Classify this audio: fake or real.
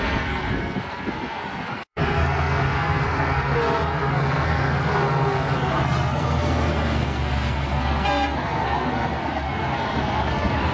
fake